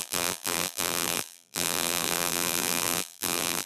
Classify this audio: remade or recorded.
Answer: remade